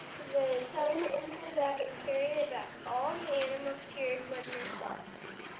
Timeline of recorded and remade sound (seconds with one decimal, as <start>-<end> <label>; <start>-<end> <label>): 0.0-0.8 recorded; 0.8-1.9 remade; 1.9-4.7 recorded; 4.7-5.6 remade